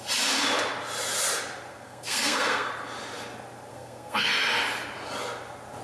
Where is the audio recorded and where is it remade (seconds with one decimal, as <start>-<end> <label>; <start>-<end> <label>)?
0.0-1.7 recorded; 1.7-2.7 remade; 2.7-3.7 recorded; 3.7-4.3 remade; 4.3-5.8 recorded